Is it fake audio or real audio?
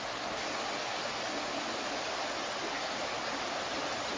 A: real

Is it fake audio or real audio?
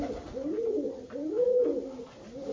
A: real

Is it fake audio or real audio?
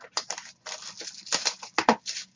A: real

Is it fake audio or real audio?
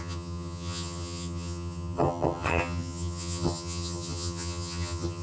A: fake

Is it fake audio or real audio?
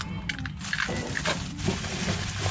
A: real